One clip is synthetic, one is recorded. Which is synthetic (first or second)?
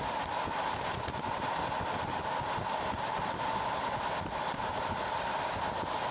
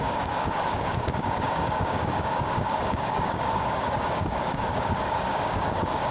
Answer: second